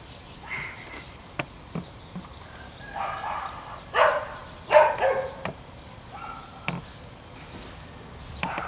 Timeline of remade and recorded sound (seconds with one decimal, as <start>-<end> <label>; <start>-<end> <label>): 0.0-8.7 recorded